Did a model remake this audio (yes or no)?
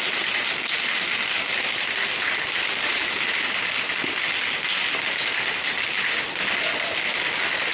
no